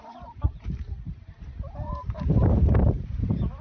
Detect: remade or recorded remade